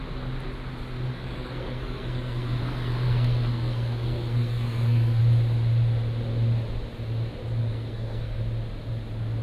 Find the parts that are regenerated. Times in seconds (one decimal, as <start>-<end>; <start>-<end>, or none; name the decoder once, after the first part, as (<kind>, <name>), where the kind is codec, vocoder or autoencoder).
1.1-5.2 (codec, SNAC); 7.6-8.4